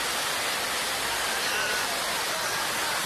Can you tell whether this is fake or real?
real